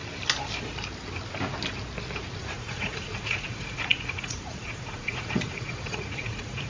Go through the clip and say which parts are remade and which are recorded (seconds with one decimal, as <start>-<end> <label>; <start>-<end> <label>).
0.0-2.4 recorded; 2.4-6.7 remade